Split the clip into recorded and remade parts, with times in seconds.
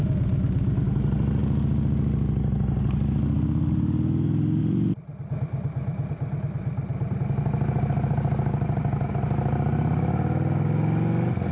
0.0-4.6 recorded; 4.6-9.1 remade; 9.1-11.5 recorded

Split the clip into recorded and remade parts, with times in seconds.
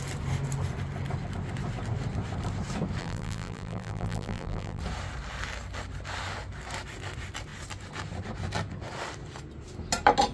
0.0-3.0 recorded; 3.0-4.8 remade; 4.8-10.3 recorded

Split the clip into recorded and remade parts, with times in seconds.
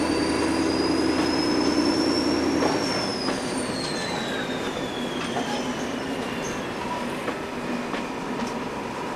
0.0-9.2 recorded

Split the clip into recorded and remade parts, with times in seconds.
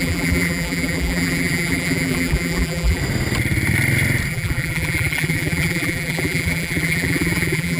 0.0-3.0 remade; 3.0-4.3 recorded; 4.3-7.8 remade